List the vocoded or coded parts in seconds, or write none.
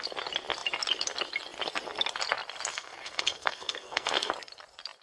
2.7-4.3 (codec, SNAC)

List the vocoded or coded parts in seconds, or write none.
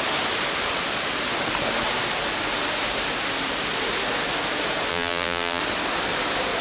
4.9-5.6 (vocoder, BigVGAN v2)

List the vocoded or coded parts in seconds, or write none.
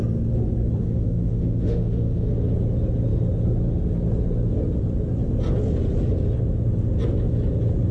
0.8-2.3 (autoencoder, DAC-VAE)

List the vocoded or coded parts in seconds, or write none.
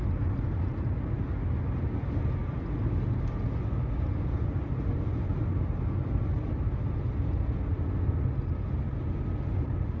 none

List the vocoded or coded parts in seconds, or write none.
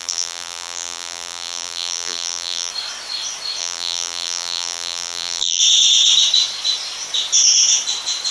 0.0-2.7 (vocoder, BigVGAN v2); 3.6-5.6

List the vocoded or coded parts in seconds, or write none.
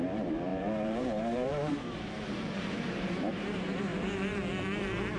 0.0-3.9 (vocoder, BigVGAN v2)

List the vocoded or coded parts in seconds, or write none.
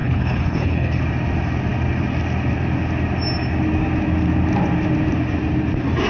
0.0-1.0 (codec, HILCodec)